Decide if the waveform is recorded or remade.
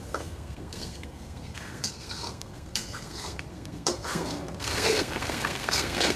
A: remade